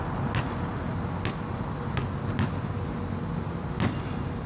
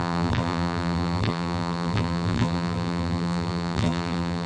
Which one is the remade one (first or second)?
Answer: second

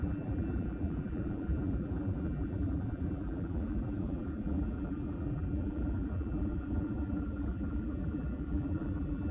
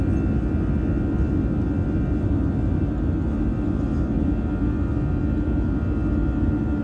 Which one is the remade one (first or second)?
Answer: first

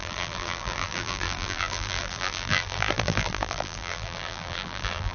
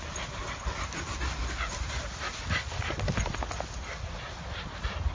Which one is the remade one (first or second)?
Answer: first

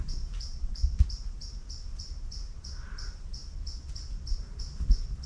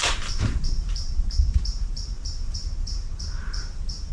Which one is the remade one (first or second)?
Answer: second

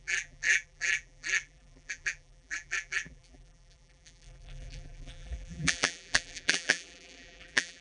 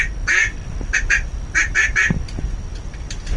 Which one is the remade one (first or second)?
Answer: first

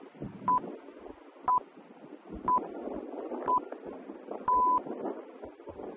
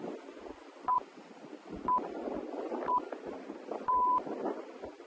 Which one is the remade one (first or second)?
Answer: second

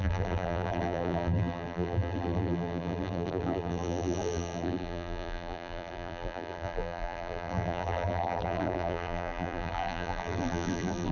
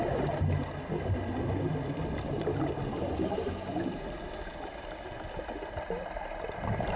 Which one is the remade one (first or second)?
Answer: first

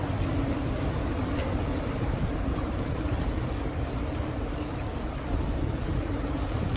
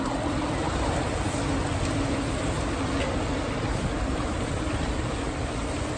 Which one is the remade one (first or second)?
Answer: first